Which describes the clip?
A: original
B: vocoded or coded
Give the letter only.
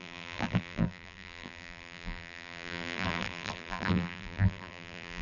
B